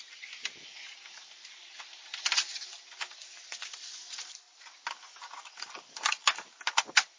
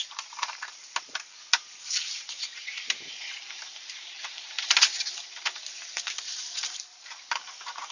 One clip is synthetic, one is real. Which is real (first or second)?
first